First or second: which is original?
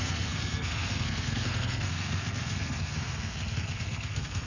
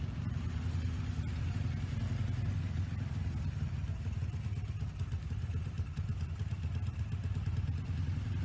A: second